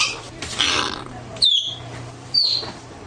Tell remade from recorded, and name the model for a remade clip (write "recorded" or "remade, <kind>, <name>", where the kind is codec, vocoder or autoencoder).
remade, vocoder, BigVGAN v2